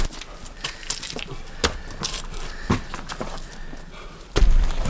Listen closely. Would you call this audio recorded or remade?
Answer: recorded